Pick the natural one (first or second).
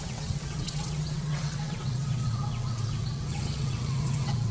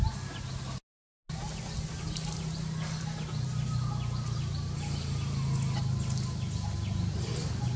second